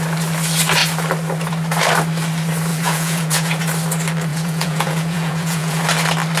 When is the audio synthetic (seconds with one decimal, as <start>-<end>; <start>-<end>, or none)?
2.7-3.6; 4.3-5.8